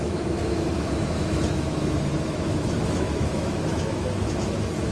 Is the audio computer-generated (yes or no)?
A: yes